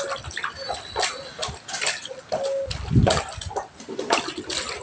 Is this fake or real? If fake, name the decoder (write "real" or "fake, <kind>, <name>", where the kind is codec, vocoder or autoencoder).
real